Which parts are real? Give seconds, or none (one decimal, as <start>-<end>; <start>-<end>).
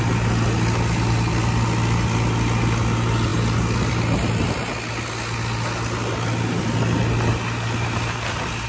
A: 0.0-8.7